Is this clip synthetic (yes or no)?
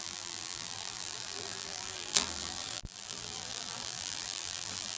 yes